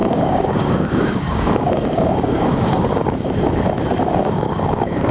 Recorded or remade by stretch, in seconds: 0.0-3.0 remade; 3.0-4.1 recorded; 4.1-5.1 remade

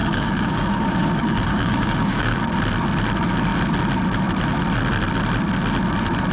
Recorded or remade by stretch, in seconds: 0.0-2.4 remade; 2.4-6.3 recorded

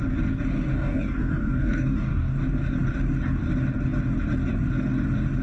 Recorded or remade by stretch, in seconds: 0.0-0.7 recorded; 0.7-2.4 remade; 2.4-5.4 recorded

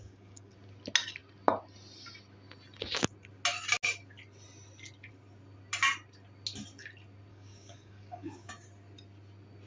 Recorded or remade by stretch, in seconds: 0.0-0.5 remade; 0.5-7.3 recorded; 7.3-8.5 remade; 8.5-9.7 recorded